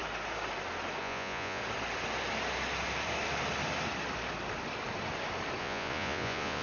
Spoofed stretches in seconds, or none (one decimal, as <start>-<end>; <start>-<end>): 1.0-1.6; 5.6-6.6